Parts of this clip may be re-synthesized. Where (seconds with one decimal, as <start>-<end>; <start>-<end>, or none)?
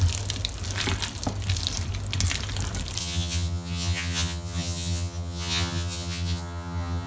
3.0-7.1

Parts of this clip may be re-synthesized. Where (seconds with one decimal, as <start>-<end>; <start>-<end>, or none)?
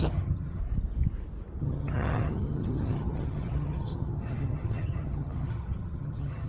0.0-0.6; 1.6-6.5